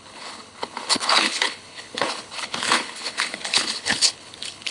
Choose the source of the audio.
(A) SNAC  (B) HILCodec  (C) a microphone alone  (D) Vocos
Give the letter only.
B